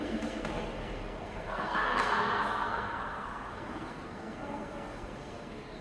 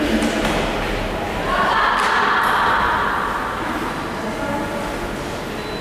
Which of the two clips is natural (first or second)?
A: second